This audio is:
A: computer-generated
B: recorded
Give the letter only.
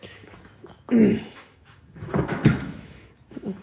A